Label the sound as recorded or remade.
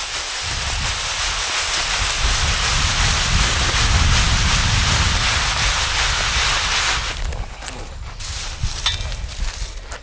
recorded